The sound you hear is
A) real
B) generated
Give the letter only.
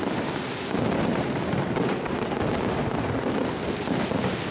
A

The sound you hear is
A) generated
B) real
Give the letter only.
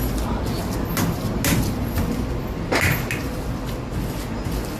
B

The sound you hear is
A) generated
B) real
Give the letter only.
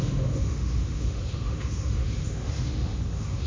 A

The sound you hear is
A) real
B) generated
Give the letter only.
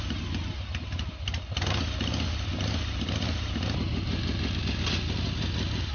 A